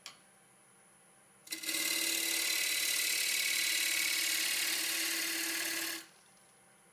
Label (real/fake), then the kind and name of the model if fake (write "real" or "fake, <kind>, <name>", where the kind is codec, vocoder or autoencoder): real